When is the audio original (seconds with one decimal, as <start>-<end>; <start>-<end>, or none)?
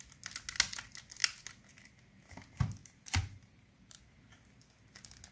0.0-2.8; 4.0-5.3